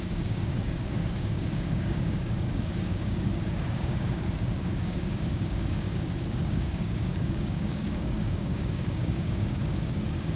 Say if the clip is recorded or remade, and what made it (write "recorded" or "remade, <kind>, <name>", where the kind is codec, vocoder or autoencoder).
remade, codec, DAC